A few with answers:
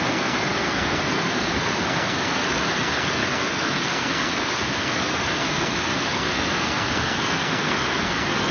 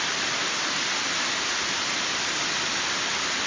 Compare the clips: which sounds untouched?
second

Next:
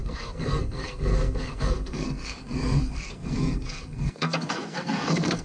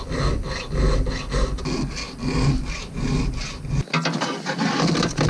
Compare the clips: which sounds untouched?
second